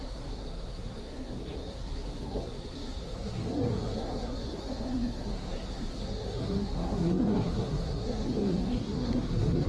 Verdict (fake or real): fake